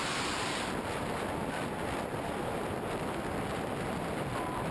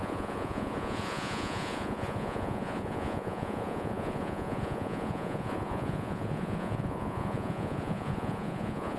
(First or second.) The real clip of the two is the first